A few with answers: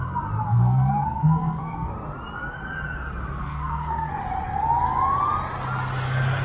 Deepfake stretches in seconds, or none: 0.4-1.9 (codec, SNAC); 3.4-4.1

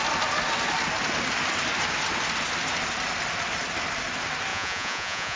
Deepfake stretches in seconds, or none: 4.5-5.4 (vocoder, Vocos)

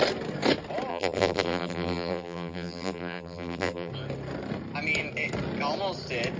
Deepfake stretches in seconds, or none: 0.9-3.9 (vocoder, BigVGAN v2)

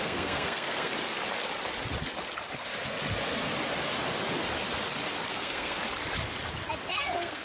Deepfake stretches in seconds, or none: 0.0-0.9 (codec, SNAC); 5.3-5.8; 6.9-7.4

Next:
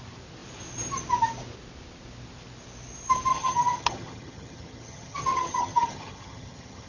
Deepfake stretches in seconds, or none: 3.3-6.9 (vocoder, HiFi-GAN)